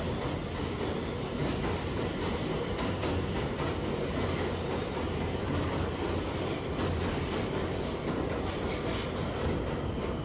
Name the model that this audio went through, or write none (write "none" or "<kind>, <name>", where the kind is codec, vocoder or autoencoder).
none